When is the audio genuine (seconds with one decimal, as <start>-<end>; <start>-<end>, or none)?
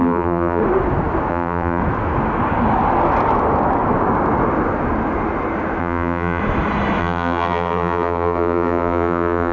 0.6-1.3; 1.8-5.8; 6.4-7.0